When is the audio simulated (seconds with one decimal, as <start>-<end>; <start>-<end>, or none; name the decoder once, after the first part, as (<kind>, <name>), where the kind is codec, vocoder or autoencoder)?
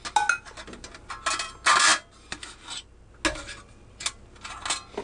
none